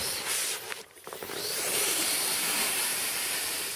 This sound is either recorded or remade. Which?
remade